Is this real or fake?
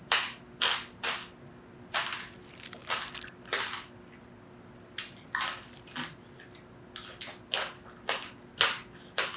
real